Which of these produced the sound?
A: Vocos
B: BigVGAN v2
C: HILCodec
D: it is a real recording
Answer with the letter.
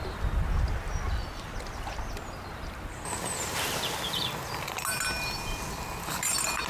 D